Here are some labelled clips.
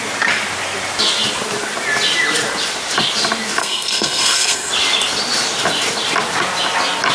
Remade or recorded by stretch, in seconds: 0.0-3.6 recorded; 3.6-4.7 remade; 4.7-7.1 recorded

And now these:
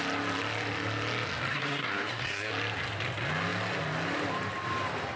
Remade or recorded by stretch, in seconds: 0.0-1.5 recorded; 1.5-2.5 remade; 2.5-5.2 recorded

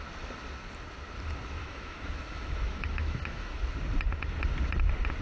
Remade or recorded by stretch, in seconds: 0.0-1.6 recorded; 1.6-3.6 remade; 3.6-5.2 recorded